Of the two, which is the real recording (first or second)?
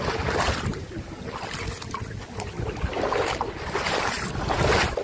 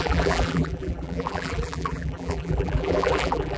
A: first